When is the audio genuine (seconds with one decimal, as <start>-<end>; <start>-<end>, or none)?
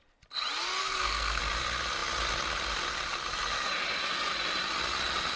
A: 0.0-0.8; 1.4-5.4